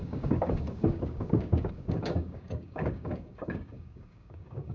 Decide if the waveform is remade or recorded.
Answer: remade